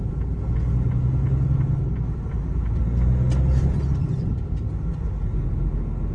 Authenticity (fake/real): real